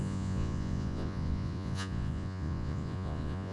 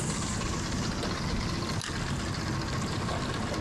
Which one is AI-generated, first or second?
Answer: first